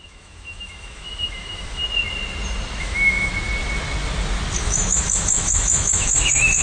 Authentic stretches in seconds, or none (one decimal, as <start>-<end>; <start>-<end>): 1.8-2.8; 3.3-4.6